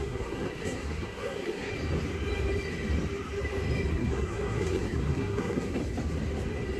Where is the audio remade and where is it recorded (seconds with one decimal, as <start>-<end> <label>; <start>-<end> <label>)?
0.0-1.7 remade; 1.7-3.9 recorded; 3.9-5.8 remade; 5.8-6.8 recorded